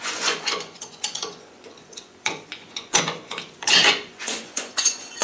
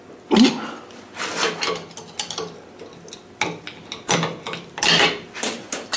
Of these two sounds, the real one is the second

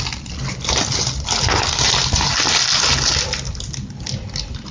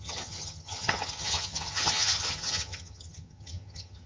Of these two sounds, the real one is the first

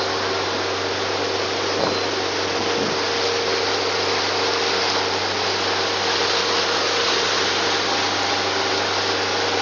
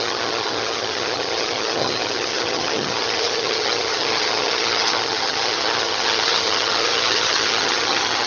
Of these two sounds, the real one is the first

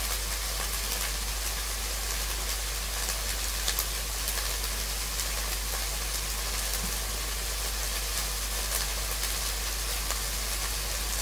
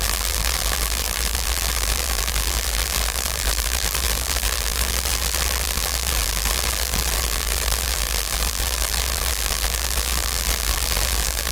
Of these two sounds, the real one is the first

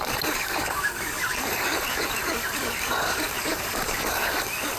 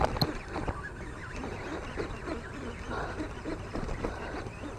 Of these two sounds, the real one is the second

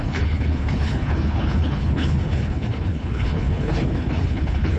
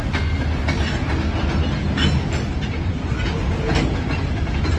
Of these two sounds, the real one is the second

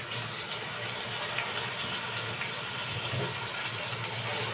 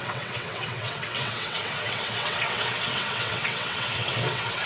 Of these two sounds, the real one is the first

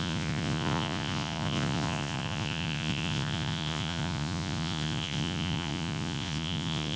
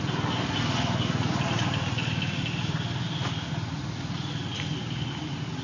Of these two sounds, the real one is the second